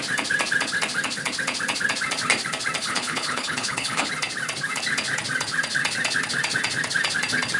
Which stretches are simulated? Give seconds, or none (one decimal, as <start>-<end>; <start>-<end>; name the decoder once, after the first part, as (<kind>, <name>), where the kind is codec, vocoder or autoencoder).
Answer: 2.8-4.1 (codec, HILCodec)